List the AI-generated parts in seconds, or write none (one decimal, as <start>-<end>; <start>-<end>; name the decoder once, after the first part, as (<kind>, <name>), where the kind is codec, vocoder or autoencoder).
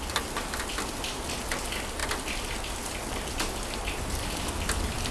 none